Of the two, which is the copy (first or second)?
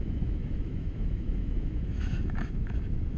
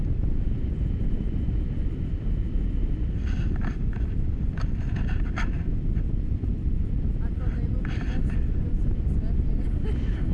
first